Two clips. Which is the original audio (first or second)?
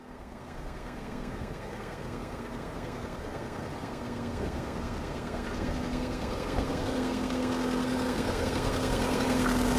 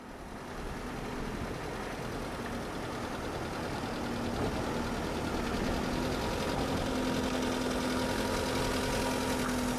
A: second